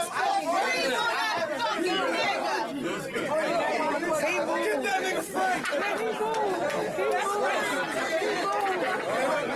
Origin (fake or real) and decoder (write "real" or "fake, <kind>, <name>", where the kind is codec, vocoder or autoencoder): real